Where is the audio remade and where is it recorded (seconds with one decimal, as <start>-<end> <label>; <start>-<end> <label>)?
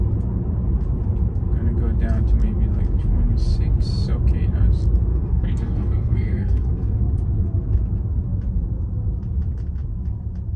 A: 0.0-5.1 recorded; 5.1-7.0 remade; 7.0-10.6 recorded